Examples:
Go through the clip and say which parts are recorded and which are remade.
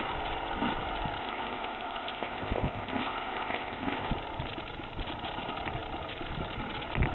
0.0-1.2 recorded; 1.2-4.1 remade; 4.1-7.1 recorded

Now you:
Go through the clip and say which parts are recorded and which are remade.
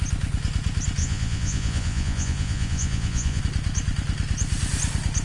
0.0-1.0 recorded; 1.0-3.4 remade; 3.4-5.2 recorded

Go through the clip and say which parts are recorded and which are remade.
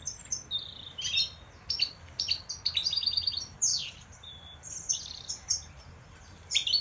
0.0-2.7 recorded; 2.7-6.8 remade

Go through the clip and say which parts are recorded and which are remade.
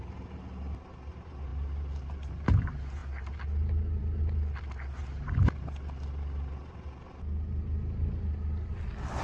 0.0-1.5 recorded; 1.5-2.3 remade; 2.3-5.0 recorded; 5.0-5.6 remade; 5.6-9.2 recorded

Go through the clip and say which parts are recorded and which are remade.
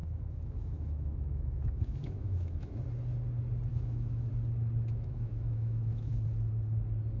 0.0-2.8 remade; 2.8-3.7 recorded; 3.7-4.3 remade; 4.3-4.9 recorded; 4.9-6.2 remade; 6.2-7.2 recorded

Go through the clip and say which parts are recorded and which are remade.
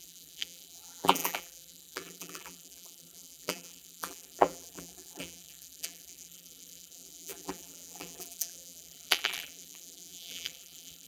0.0-11.1 remade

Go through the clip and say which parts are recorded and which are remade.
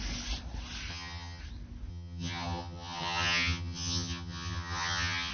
0.0-0.9 recorded; 0.9-1.4 remade; 1.4-1.9 recorded; 1.9-5.3 remade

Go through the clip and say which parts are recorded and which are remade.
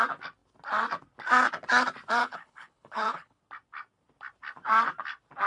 0.0-2.2 recorded; 2.2-3.4 remade; 3.4-5.5 recorded